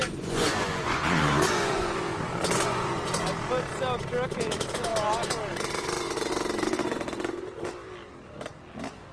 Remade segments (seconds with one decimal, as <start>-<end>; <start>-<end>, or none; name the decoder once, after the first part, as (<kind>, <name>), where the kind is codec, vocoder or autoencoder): 0.0-3.2 (vocoder, Vocos)